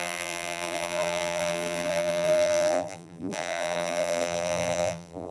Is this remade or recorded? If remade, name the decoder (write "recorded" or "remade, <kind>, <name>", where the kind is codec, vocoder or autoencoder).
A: remade, vocoder, BigVGAN v2